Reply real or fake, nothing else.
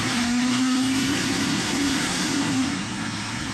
fake